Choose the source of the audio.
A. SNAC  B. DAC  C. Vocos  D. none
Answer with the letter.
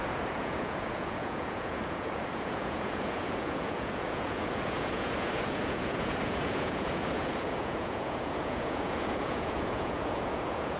C